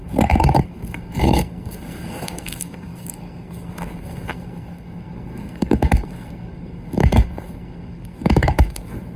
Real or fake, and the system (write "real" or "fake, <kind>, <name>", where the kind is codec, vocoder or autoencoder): fake, codec, SNAC